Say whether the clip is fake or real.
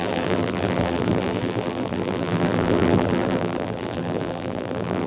fake